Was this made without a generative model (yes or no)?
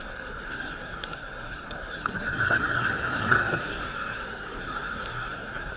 no